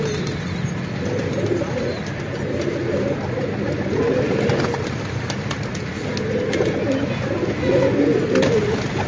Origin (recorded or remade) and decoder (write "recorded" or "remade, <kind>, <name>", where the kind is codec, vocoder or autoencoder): recorded